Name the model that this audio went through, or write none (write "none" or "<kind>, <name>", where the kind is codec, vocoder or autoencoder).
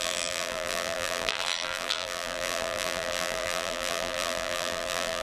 vocoder, BigVGAN v2